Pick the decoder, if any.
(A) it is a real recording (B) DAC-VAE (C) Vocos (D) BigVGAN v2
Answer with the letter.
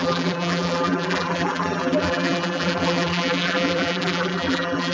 D